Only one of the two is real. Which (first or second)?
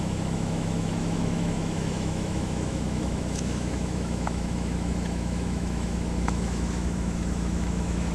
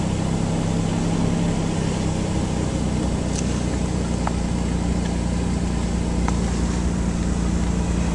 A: second